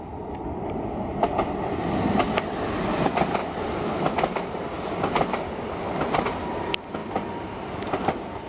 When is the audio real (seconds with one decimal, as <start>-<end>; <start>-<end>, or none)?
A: none